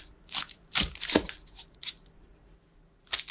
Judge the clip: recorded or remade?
recorded